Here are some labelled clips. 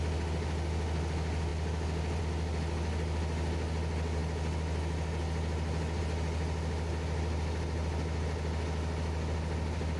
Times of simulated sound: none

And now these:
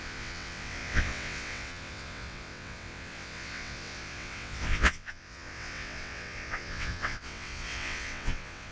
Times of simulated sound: 0.0-8.7 (vocoder, WaveNeXt)

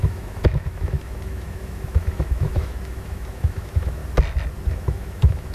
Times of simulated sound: 0.0-4.0 (autoencoder, DAC-VAE); 4.7-5.5

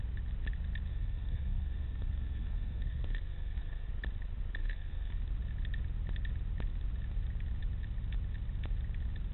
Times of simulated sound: 0.9-3.9 (codec, SNAC); 4.6-5.2

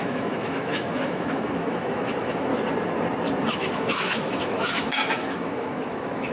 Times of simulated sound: 0.0-2.5 (autoencoder, DAC-VAE); 3.5-6.3

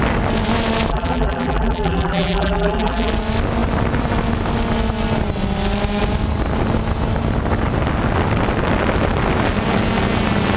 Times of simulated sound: 0.9-3.1 (vocoder, BigVGAN v2)